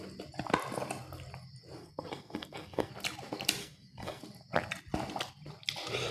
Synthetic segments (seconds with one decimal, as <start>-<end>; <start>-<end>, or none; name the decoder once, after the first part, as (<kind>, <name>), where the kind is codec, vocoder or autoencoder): 1.8-2.9 (codec, SNAC); 3.6-4.2